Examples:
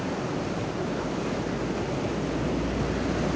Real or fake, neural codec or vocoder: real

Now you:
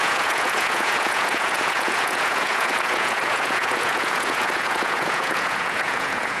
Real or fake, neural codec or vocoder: fake, vocoder, Vocos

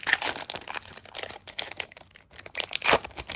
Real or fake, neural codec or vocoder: real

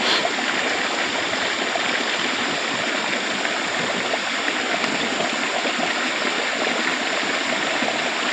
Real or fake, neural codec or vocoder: real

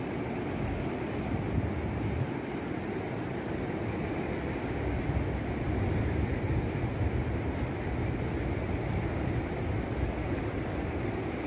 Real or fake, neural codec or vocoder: real